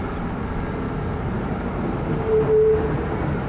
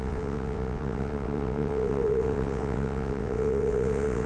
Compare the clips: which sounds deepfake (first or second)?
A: second